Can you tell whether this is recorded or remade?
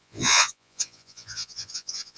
remade